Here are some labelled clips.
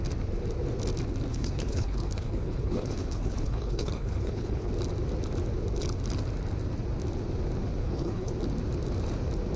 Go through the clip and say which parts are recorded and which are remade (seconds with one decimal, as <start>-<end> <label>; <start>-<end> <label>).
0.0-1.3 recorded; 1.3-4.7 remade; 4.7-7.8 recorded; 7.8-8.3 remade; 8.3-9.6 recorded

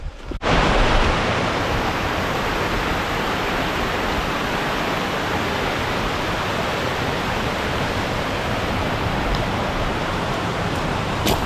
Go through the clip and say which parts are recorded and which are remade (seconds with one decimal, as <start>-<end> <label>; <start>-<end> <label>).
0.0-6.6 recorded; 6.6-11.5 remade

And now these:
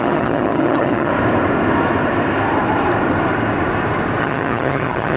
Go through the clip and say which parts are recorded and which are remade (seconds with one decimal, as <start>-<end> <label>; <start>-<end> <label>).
0.0-1.1 remade; 1.1-4.2 recorded; 4.2-5.2 remade

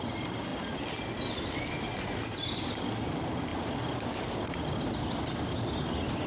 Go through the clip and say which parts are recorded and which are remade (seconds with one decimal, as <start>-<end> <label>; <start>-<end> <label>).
0.0-6.3 recorded

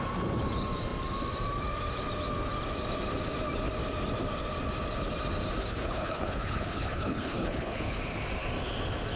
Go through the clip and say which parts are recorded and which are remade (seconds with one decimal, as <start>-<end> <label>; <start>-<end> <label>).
0.0-5.6 recorded; 5.6-8.0 remade; 8.0-9.2 recorded